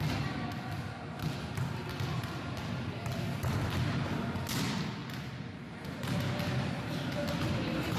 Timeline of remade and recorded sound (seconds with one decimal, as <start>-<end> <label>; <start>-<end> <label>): 0.0-8.0 recorded